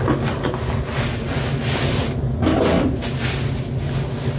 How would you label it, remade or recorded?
recorded